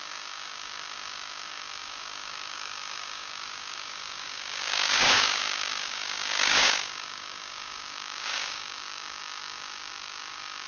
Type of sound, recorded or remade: remade